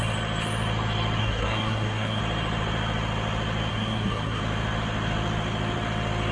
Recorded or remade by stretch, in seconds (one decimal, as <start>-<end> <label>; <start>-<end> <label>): 0.0-1.2 recorded; 1.2-2.2 remade; 2.2-3.7 recorded; 3.7-4.4 remade; 4.4-6.3 recorded